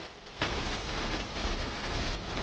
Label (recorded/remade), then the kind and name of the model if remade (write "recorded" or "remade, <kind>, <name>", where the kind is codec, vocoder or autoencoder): remade, codec, SNAC